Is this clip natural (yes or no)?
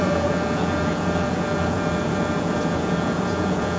no